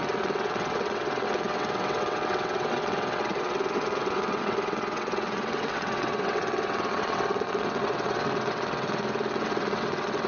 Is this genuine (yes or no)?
no